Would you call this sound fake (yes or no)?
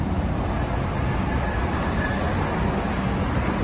no